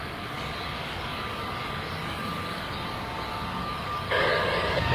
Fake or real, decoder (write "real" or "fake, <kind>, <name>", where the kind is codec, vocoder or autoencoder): fake, codec, DAC